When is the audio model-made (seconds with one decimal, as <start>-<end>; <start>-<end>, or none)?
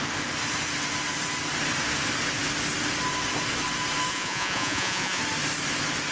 4.1-5.2